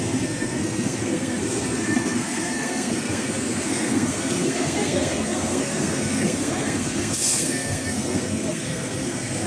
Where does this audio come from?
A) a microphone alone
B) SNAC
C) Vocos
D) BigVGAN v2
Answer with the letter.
B